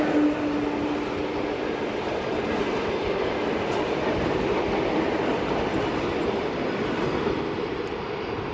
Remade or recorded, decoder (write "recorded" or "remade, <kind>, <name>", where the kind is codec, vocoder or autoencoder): recorded